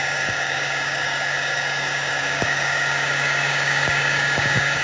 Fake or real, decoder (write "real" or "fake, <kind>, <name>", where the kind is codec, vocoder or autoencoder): fake, codec, DAC